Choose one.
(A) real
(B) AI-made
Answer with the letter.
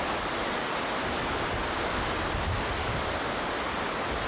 A